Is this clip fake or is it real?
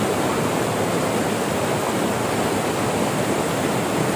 real